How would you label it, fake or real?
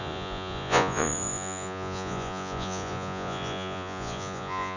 fake